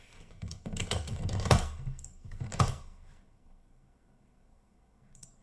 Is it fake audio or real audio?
fake